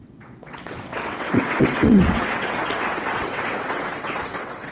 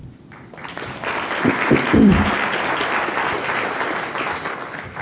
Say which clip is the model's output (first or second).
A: first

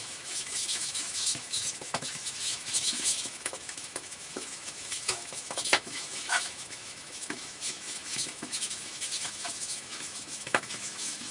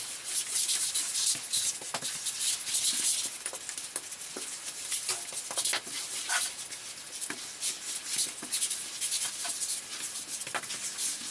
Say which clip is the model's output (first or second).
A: first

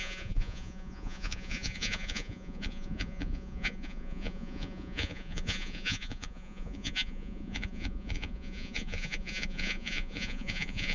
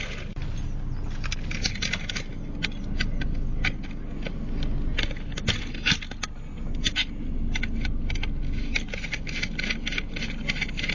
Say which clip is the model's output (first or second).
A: first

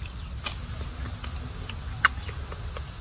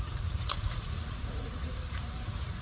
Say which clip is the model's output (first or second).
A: second